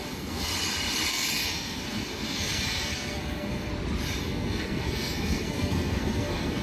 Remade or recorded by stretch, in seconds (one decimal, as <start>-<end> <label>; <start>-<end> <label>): 0.0-0.5 remade; 0.5-1.1 recorded; 1.1-3.7 remade; 3.7-4.2 recorded; 4.2-6.6 remade